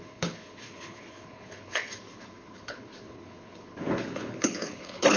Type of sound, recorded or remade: remade